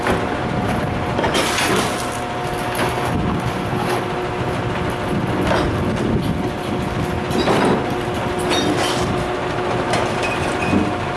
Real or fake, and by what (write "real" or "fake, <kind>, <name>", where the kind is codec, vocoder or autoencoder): real